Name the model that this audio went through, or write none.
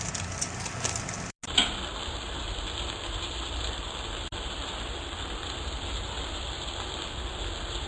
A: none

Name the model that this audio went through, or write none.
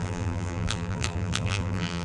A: vocoder, BigVGAN v2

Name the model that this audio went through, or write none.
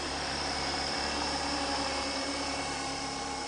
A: vocoder, BigVGAN v2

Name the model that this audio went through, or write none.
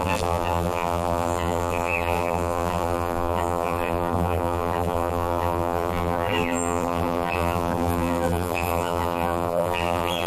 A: vocoder, BigVGAN v2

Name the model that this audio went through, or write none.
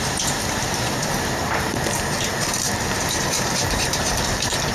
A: vocoder, BigVGAN v2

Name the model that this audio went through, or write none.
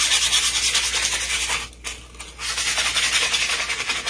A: none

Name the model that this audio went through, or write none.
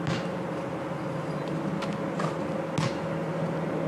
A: none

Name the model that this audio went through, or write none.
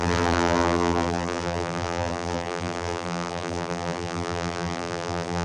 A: vocoder, BigVGAN v2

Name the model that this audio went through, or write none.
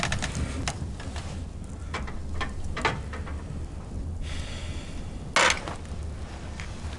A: none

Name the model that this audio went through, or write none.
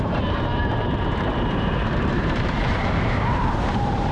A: vocoder, BigVGAN v2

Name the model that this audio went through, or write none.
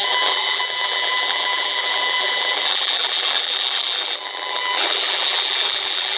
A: vocoder, BigVGAN v2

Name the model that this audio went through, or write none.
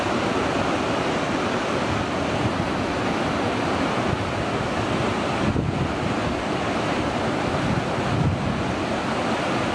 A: none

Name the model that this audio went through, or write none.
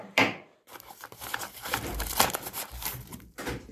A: vocoder, BigVGAN v2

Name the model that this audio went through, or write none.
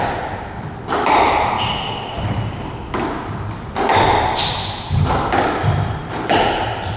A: none